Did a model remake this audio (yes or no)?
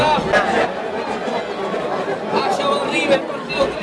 no